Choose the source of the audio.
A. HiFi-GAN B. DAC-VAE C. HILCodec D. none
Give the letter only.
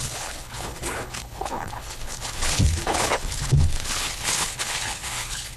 C